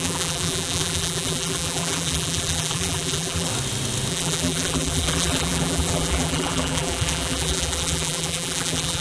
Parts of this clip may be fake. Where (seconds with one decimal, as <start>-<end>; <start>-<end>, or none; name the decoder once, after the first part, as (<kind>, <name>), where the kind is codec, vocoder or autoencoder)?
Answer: 0.0-3.5 (vocoder, BigVGAN v2); 4.1-9.0